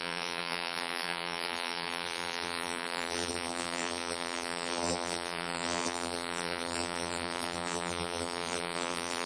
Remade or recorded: remade